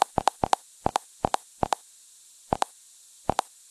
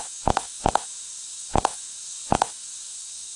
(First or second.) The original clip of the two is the first